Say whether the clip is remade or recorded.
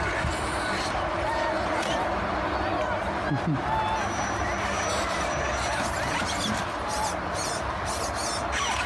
recorded